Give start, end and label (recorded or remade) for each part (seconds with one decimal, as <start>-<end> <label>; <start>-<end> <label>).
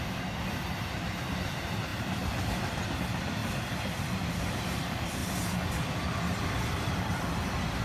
0.0-5.2 remade; 5.2-5.7 recorded; 5.7-7.8 remade